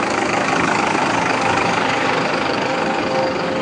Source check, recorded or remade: remade